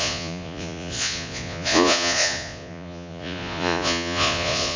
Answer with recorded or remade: remade